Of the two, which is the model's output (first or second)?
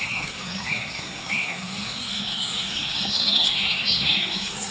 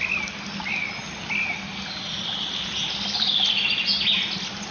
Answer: first